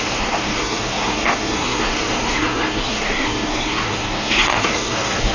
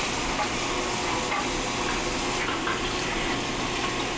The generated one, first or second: first